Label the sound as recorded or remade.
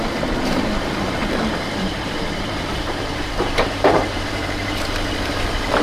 remade